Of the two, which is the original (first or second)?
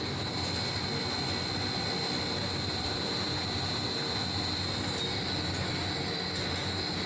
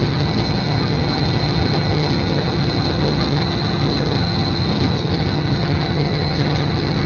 first